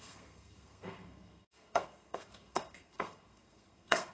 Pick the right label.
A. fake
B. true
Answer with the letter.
A